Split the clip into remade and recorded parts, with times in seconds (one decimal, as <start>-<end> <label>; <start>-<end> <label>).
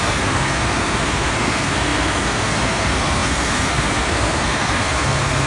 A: 0.0-5.5 remade